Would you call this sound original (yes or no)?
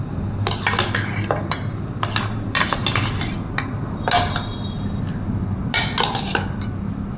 yes